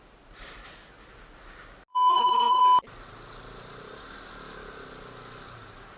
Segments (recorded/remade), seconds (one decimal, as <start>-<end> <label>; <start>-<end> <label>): 0.0-2.1 recorded; 2.1-2.6 remade; 2.6-6.0 recorded